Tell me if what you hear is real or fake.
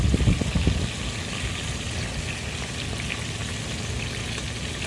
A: real